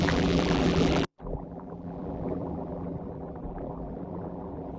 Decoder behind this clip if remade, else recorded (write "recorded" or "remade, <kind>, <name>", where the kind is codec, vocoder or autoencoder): remade, vocoder, BigVGAN v2